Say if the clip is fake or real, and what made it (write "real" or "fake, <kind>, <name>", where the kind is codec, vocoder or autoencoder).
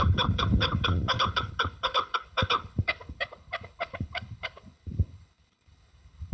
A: fake, codec, HILCodec